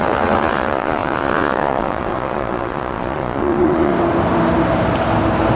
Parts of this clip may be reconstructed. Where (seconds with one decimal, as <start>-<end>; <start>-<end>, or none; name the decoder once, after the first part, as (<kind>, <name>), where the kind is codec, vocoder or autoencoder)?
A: 0.0-3.9 (vocoder, Vocos)